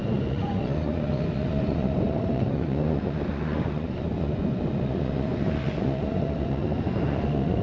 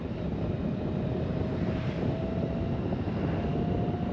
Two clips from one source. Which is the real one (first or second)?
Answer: second